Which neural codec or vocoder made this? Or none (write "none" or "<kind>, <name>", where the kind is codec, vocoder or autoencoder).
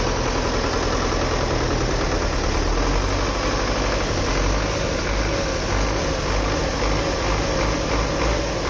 none